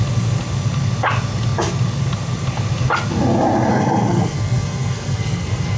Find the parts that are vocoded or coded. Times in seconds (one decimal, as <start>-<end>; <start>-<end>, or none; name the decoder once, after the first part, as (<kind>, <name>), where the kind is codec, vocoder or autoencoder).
3.7-5.8 (codec, SNAC)